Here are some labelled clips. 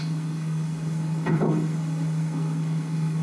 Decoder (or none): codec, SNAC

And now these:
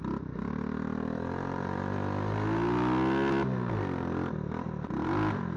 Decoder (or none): none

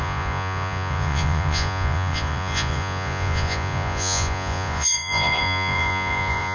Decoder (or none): vocoder, Vocos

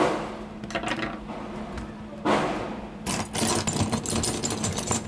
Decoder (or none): none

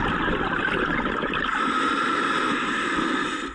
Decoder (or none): none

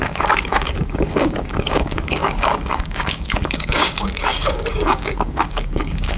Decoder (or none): codec, DAC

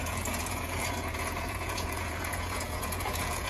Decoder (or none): vocoder, Vocos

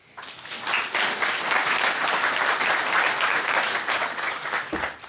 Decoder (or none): none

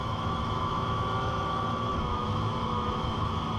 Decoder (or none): autoencoder, DAC-VAE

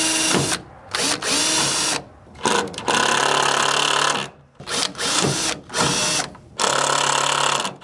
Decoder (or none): none